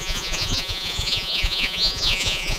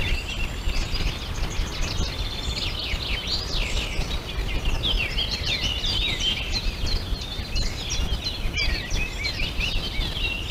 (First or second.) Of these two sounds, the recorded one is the second